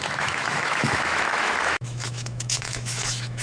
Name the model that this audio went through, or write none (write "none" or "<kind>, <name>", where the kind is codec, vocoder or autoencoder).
autoencoder, DAC-VAE